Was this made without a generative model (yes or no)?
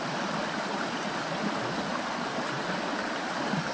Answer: yes